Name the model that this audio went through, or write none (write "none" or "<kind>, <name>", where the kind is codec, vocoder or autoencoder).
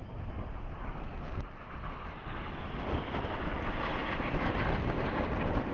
none